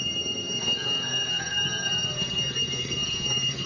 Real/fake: fake